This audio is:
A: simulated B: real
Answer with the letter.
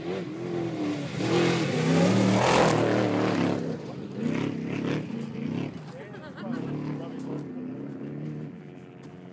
B